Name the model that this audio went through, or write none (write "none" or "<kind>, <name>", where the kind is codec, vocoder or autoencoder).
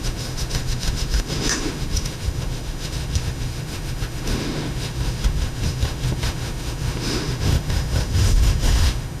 autoencoder, DAC-VAE